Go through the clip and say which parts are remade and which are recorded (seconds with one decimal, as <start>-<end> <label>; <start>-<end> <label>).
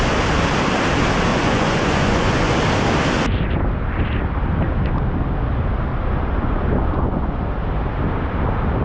0.0-1.3 recorded; 1.3-2.6 remade; 2.6-5.9 recorded; 5.9-7.4 remade; 7.4-8.8 recorded